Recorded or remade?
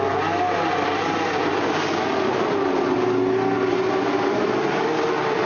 recorded